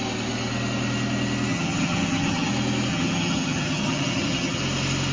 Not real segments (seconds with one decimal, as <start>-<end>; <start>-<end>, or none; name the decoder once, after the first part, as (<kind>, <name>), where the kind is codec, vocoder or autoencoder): 1.5-2.5 (vocoder, HiFi-GAN); 2.9-4.6